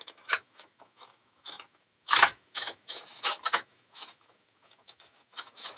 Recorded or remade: remade